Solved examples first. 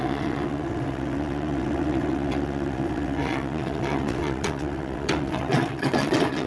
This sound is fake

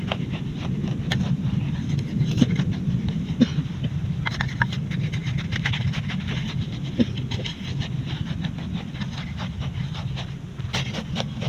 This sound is real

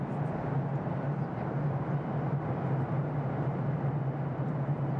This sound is real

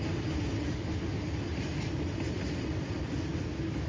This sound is real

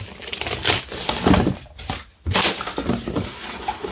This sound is real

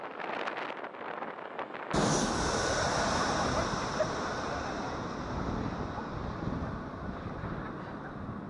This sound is real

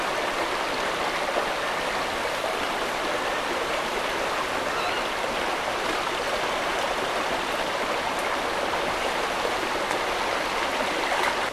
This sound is real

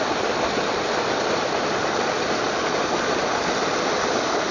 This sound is real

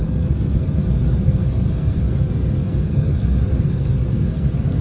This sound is fake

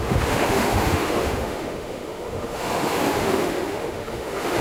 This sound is fake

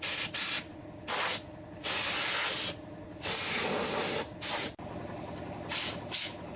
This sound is real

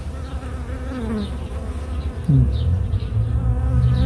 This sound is real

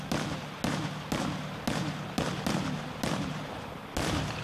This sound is real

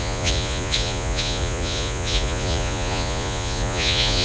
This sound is fake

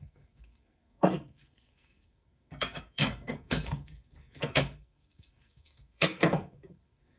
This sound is fake